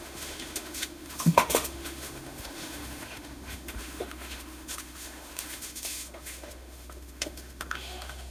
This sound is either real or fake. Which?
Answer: fake